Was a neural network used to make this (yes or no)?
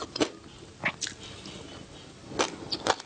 no